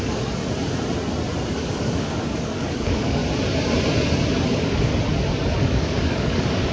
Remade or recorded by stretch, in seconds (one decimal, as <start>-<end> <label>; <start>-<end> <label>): 0.0-0.4 remade; 0.4-1.5 recorded; 1.5-3.2 remade; 3.2-4.4 recorded; 4.4-4.9 remade; 4.9-5.6 recorded; 5.6-6.7 remade